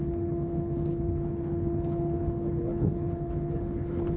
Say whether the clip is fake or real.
fake